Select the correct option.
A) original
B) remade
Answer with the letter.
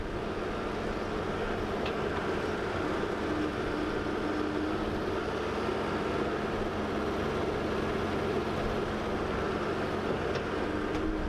A